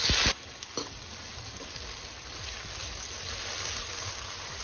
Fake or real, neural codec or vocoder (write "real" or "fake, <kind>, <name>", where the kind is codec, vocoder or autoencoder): real